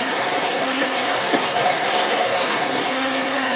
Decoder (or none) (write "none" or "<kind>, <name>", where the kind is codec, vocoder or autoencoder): codec, SNAC